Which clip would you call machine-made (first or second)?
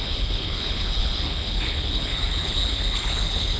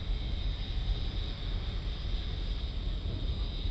first